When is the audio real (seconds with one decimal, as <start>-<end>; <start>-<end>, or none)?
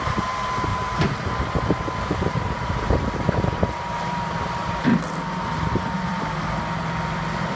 0.7-2.1; 4.9-5.4